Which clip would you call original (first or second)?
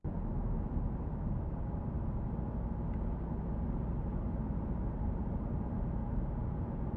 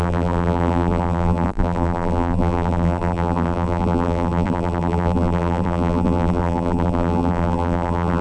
first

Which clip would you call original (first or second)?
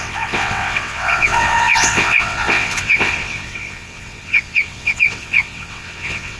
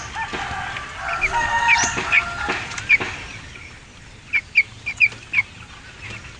second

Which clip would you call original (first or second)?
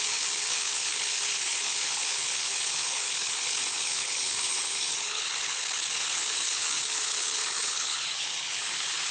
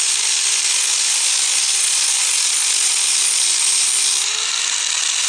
second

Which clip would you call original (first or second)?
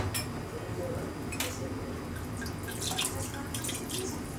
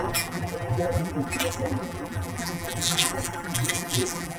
first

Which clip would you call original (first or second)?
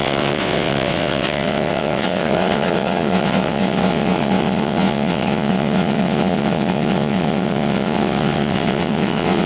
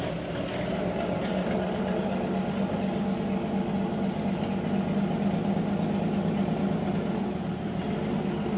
second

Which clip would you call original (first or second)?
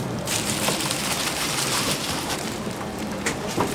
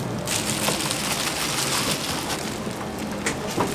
second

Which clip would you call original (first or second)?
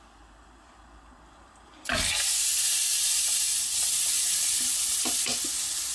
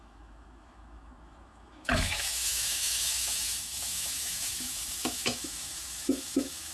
first